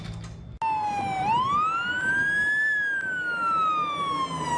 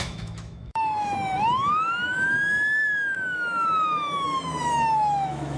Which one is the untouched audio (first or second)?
first